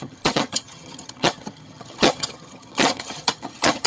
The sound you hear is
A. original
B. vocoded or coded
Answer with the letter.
B